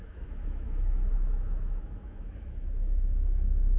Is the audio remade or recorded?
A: remade